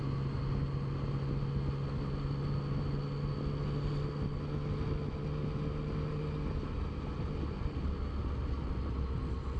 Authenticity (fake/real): real